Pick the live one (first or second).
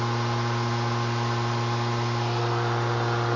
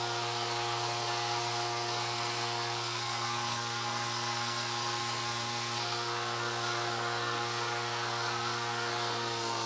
first